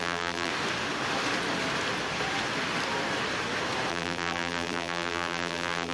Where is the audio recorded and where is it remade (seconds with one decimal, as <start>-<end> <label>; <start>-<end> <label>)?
0.0-0.5 remade; 0.5-3.9 recorded; 3.9-5.9 remade